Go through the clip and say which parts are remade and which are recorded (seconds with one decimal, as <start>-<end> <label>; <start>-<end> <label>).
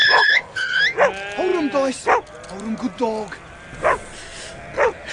0.0-0.8 remade; 0.8-5.1 recorded